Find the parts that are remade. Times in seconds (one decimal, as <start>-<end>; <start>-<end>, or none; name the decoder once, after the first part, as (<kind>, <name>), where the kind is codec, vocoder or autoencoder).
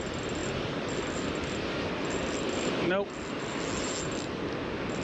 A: none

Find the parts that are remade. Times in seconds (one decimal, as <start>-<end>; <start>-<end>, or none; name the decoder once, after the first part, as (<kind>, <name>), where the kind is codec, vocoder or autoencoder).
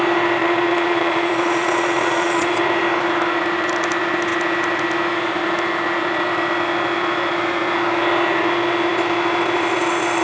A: 0.4-2.5 (vocoder, Vocos)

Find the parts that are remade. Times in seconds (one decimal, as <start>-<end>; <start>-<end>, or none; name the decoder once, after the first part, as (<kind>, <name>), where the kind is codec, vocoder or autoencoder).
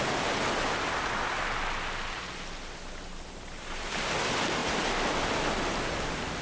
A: none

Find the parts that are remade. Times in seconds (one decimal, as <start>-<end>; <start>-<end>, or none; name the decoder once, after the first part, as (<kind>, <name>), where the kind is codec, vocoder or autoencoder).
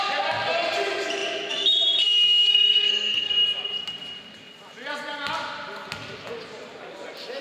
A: 2.5-3.3 (codec, SNAC)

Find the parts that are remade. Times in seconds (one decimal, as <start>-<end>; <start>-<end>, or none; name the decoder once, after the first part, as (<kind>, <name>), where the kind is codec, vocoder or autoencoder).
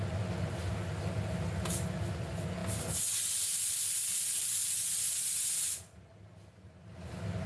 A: none